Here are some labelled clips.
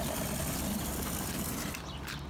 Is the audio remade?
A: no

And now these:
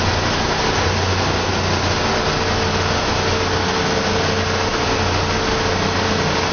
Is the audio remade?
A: no